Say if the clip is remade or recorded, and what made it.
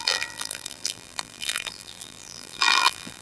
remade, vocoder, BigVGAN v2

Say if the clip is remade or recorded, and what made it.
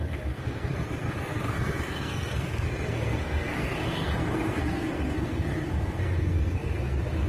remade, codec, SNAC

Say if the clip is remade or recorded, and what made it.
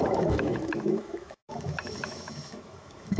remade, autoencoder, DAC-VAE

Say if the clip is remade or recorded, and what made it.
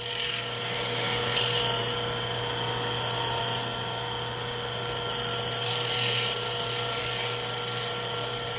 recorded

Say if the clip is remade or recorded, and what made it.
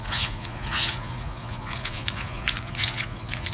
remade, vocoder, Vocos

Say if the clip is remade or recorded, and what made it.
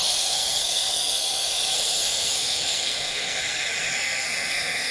remade, codec, SNAC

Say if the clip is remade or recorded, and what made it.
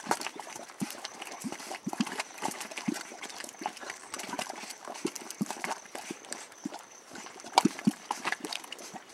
remade, vocoder, BigVGAN v2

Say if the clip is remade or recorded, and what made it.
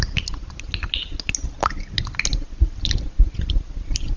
recorded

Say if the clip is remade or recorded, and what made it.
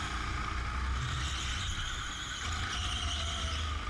recorded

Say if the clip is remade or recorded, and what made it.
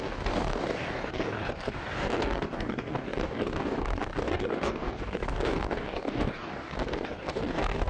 remade, codec, DAC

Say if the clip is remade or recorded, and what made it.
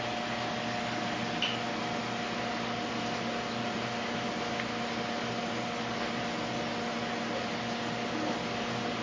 recorded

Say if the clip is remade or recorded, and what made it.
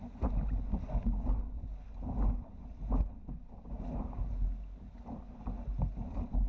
recorded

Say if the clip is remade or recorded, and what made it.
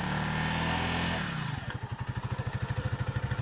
recorded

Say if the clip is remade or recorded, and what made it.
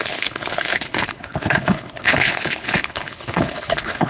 remade, codec, HILCodec